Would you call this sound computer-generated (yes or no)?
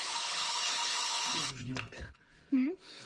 yes